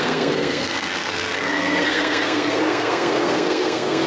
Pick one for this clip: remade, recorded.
remade